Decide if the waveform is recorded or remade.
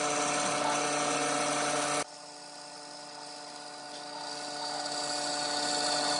recorded